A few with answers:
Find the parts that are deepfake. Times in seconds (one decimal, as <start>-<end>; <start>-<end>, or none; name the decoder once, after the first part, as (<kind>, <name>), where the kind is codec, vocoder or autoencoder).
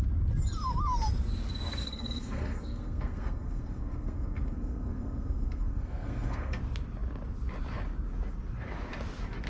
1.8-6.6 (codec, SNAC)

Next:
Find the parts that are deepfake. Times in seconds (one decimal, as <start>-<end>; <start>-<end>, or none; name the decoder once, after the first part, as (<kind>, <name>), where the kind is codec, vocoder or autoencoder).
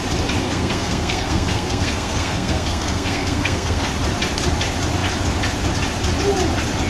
0.4-3.9 (codec, SNAC)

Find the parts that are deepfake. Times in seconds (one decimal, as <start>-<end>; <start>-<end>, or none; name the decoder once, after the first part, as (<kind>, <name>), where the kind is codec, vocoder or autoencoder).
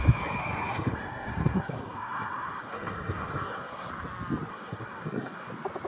0.4-3.9 (codec, SNAC); 4.5-5.5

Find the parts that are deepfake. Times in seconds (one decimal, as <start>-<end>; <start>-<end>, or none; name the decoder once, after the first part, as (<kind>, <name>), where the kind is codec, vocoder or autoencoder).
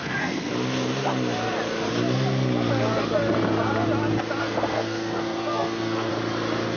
0.0-0.5 (codec, SNAC); 4.4-6.1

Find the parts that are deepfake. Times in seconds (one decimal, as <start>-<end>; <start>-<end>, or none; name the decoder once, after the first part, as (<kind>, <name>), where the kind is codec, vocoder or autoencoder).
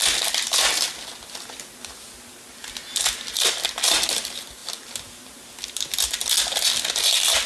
none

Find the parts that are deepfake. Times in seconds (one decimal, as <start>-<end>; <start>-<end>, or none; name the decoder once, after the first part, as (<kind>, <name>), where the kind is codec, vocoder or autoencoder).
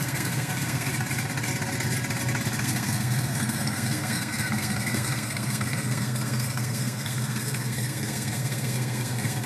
0.0-0.9 (codec, SNAC); 2.6-9.5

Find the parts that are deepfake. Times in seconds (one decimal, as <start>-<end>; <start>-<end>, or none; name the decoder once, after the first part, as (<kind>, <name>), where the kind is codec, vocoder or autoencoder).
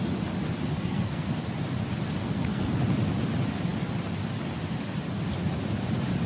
0.7-1.3 (codec, SNAC); 2.2-2.7